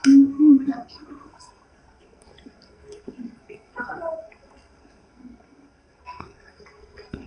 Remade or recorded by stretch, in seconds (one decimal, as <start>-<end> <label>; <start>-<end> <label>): 0.0-7.3 remade